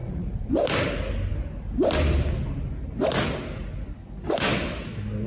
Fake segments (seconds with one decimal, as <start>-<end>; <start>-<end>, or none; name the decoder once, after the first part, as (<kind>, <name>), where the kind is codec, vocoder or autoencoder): 0.0-0.5 (vocoder, Vocos)